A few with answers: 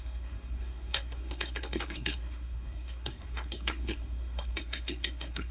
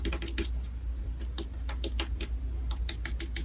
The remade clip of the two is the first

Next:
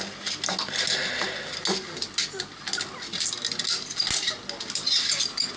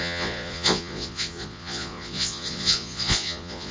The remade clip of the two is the second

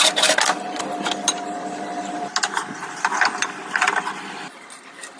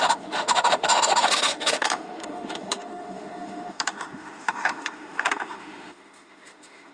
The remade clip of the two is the second